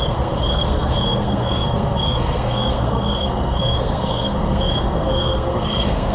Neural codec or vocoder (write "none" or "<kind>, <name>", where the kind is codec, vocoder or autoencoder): codec, SNAC